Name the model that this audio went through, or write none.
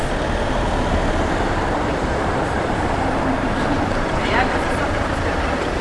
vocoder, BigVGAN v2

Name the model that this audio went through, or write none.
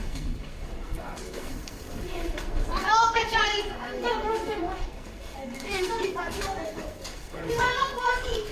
codec, SNAC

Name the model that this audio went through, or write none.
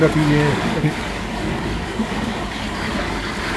codec, DAC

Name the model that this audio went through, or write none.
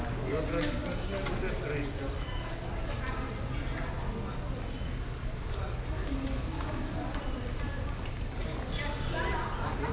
none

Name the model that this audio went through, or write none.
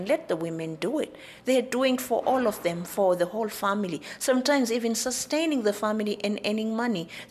none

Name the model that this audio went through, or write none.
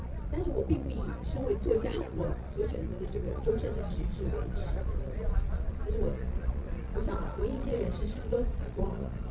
vocoder, Vocos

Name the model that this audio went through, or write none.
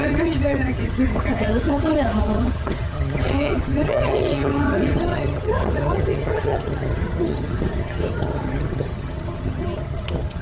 vocoder, HiFi-GAN